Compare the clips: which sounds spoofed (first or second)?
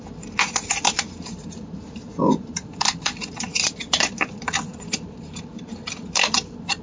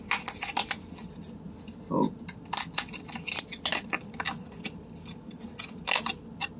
first